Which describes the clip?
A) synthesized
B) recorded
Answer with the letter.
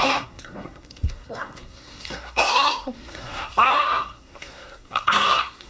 A